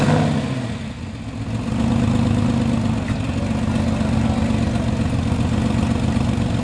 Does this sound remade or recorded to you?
recorded